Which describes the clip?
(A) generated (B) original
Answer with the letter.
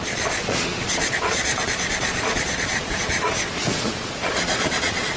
A